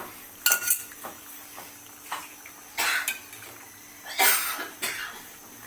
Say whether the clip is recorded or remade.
recorded